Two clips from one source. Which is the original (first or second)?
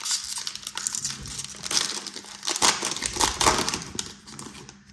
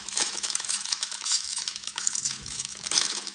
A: first